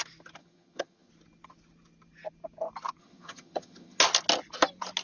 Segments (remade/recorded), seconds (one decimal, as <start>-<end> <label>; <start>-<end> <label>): 0.0-0.4 recorded; 0.4-1.1 remade; 1.1-3.0 recorded; 3.0-4.0 remade; 4.0-5.0 recorded